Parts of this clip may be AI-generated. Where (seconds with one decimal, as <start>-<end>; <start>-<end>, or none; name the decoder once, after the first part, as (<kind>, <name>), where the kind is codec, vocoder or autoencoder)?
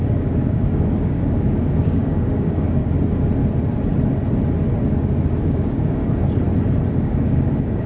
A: 0.0-2.8 (codec, DAC); 5.4-6.0; 6.9-7.9